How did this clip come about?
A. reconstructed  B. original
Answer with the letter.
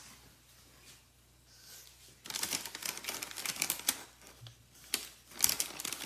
B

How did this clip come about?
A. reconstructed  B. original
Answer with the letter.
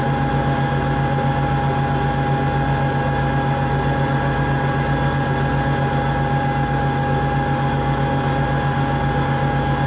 B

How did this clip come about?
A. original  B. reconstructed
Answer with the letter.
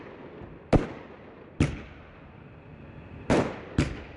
A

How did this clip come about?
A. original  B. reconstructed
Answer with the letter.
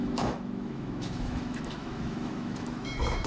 B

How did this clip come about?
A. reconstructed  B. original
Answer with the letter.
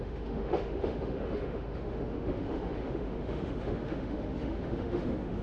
A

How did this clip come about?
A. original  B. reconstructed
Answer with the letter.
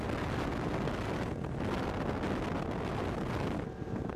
A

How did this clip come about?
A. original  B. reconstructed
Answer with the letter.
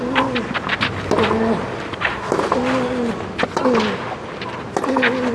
A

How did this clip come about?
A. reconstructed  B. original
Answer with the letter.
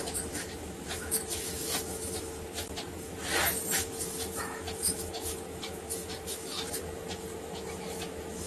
A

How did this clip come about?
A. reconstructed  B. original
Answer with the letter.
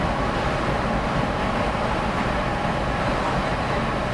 B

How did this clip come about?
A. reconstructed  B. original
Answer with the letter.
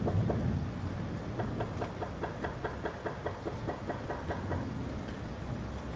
B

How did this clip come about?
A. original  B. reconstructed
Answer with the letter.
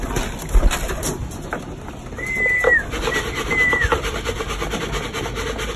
A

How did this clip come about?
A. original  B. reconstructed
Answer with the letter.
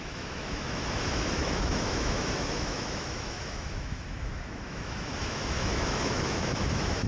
B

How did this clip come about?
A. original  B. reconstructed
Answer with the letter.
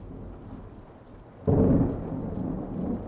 A